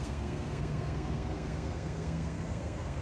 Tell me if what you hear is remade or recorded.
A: remade